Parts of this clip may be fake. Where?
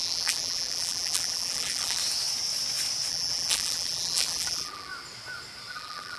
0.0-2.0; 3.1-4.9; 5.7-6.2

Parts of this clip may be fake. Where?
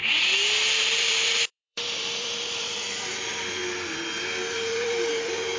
0.8-3.6; 4.5-5.6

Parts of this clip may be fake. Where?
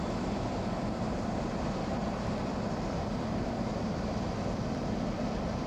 0.0-5.7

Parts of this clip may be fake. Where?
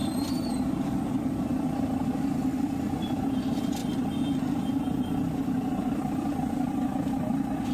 1.1-3.8; 5.8-7.7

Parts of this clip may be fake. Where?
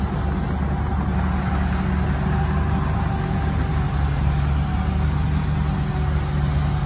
none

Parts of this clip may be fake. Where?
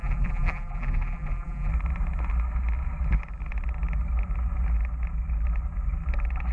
0.0-1.7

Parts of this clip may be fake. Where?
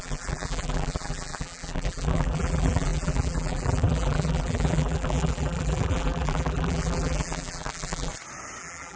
0.0-8.1; 8.6-9.0